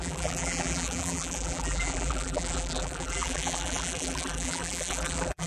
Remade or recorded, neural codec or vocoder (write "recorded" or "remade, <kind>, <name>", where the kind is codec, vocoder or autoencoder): remade, vocoder, BigVGAN v2